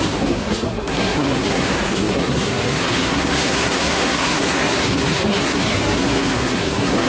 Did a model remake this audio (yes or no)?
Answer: yes